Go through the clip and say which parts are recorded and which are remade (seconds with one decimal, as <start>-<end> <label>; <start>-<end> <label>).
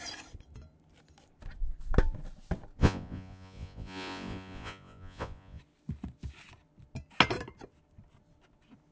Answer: 0.0-2.8 recorded; 2.8-5.6 remade; 5.6-8.9 recorded